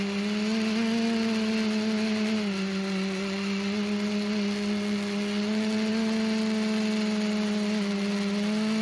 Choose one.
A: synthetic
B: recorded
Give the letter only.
B